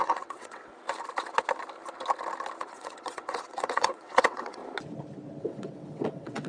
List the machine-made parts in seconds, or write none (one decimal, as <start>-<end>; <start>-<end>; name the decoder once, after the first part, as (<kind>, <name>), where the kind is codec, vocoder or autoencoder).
0.0-0.7 (vocoder, WaveNeXt); 2.6-4.6; 5.4-6.5